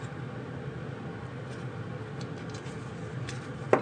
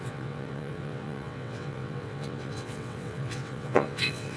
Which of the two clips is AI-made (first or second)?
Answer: second